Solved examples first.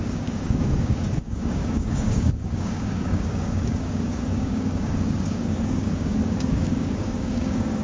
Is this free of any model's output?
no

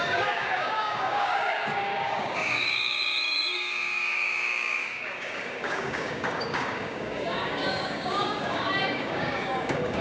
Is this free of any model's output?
no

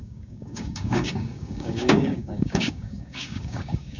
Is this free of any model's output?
no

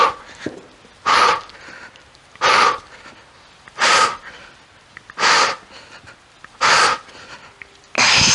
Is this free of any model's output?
yes